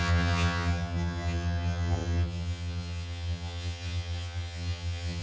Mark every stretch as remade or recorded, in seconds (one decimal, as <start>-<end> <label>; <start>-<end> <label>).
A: 0.0-5.2 remade